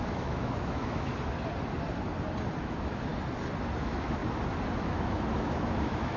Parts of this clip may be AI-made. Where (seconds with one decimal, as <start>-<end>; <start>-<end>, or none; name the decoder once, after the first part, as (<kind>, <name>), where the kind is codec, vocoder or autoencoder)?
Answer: 0.0-1.1 (autoencoder, DAC-VAE); 2.6-3.1; 3.8-4.2; 4.8-6.2